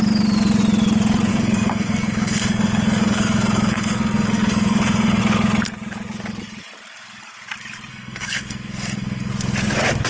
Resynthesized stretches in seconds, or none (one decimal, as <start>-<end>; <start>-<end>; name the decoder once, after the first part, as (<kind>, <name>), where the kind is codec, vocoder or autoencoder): 1.3-5.2 (codec, SNAC); 7.9-9.3